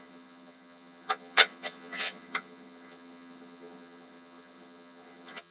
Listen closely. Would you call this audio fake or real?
fake